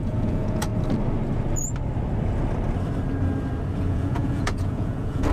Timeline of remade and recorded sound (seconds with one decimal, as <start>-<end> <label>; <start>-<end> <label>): 0.0-0.7 remade; 0.7-3.9 recorded; 3.9-5.3 remade